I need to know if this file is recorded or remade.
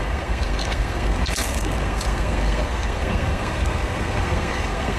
remade